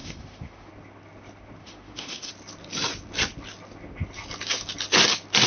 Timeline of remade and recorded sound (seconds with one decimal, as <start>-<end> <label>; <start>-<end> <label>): 0.0-0.7 remade; 0.7-1.6 recorded; 1.6-2.3 remade; 2.3-5.5 recorded